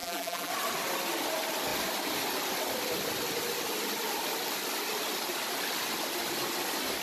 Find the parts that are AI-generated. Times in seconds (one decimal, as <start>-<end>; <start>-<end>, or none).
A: 0.0-0.5